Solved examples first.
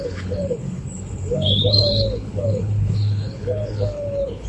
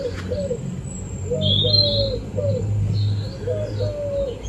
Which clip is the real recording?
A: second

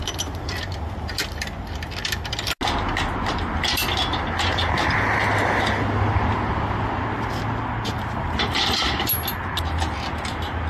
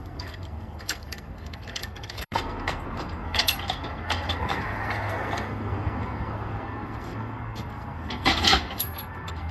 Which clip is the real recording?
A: first